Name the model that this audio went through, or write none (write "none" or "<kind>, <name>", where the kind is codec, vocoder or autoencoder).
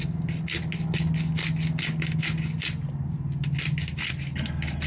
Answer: none